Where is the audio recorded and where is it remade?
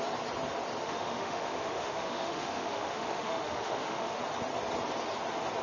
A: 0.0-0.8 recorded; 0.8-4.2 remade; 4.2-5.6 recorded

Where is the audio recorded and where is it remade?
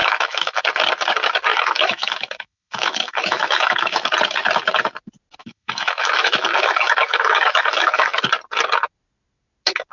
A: 0.0-0.6 remade; 0.6-1.5 recorded; 1.5-4.1 remade; 4.1-5.4 recorded; 5.4-8.2 remade; 8.2-9.9 recorded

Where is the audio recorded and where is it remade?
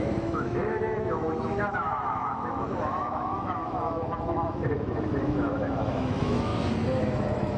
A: 0.0-6.5 remade; 6.5-7.0 recorded; 7.0-7.6 remade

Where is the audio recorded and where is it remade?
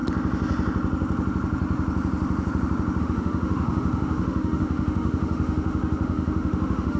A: 0.0-3.0 recorded; 3.0-7.0 remade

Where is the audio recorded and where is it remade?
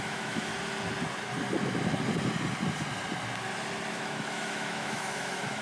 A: 0.0-0.5 remade; 0.5-3.9 recorded; 3.9-5.6 remade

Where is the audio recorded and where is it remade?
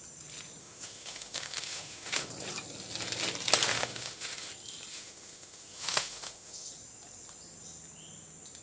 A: 0.0-0.6 recorded; 0.6-2.3 remade; 2.3-3.7 recorded; 3.7-4.5 remade; 4.5-4.9 recorded; 4.9-6.7 remade; 6.7-8.6 recorded